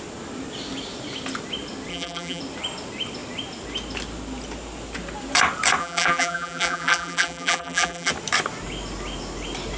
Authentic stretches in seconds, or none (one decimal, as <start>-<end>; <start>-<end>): 0.0-1.9; 2.4-5.8; 8.1-9.8